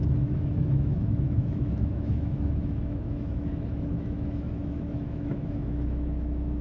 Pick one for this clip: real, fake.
fake